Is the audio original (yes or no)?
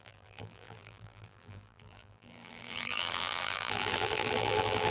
no